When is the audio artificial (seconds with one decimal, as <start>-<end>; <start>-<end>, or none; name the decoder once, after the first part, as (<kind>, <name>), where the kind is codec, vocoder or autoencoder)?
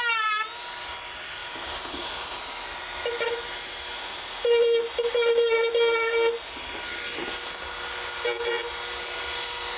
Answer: none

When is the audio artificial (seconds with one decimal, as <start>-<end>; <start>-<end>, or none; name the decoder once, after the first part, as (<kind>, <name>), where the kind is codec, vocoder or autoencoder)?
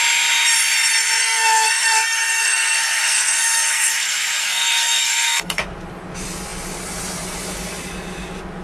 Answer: 1.2-5.6 (codec, SNAC)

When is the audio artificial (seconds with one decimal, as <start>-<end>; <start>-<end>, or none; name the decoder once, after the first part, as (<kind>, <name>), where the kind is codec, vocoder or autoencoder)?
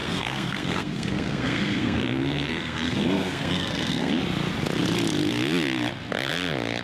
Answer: 0.0-4.1 (codec, SNAC)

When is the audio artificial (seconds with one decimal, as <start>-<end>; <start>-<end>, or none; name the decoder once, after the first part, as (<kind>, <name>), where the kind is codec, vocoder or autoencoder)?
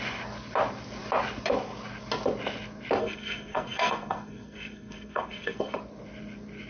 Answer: 3.0-5.8 (codec, SNAC)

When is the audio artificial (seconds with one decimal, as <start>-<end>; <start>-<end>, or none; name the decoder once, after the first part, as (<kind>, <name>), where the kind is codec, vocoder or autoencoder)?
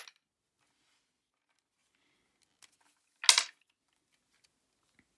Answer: none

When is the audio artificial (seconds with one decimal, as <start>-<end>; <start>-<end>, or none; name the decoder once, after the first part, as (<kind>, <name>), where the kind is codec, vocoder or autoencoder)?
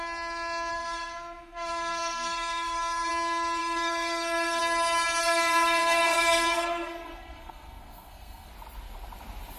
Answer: 0.7-3.1 (codec, SNAC); 3.6-4.6; 5.2-8.5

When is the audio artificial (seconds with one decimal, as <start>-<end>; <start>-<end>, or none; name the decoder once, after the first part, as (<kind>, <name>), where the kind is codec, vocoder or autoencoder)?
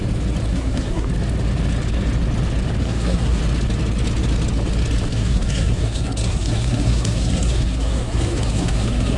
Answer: 0.5-1.1 (codec, SNAC); 2.8-3.4; 5.1-9.2